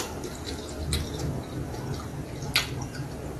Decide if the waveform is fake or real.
real